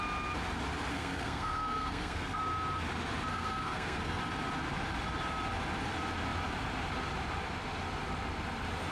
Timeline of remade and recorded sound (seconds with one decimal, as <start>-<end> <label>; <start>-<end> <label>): 0.0-0.9 recorded; 0.9-2.4 remade; 2.4-3.3 recorded; 3.3-4.2 remade; 4.2-8.9 recorded